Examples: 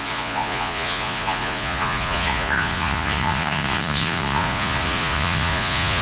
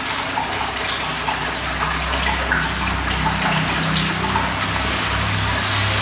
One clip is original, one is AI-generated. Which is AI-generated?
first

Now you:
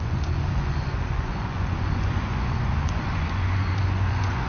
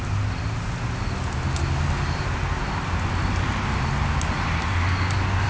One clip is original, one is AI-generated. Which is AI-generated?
first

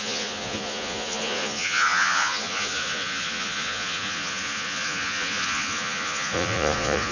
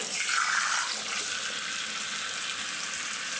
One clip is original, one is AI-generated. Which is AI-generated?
first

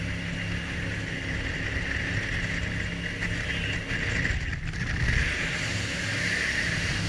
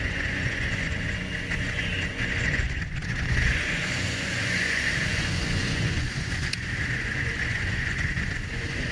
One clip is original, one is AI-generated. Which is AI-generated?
second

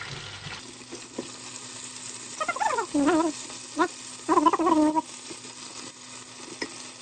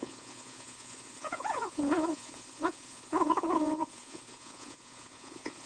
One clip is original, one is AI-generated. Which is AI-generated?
second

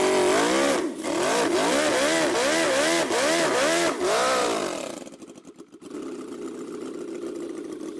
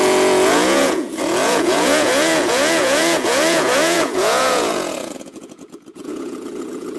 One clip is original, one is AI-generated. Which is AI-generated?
second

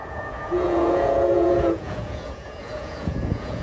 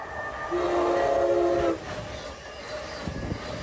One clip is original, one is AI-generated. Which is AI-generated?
first